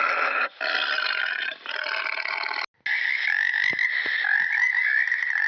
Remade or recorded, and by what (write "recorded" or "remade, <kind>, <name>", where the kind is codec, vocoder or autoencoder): recorded